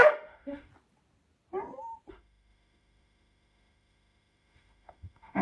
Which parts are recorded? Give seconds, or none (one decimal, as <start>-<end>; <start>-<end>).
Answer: 0.7-2.1